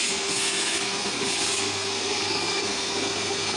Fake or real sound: fake